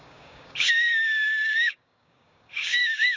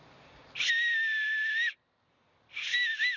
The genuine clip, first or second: second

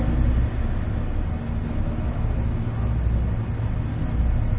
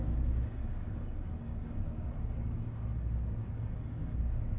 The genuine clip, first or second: first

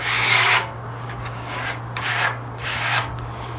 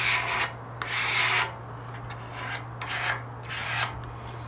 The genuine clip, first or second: second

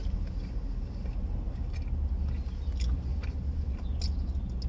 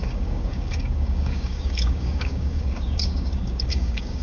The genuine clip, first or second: first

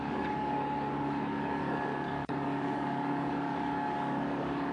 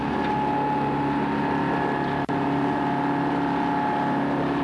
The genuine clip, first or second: second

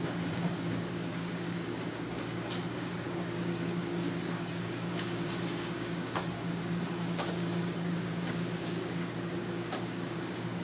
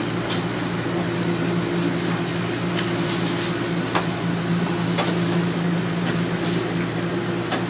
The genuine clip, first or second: second